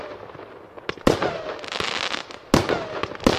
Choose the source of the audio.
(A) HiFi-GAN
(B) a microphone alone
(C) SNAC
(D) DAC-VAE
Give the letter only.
B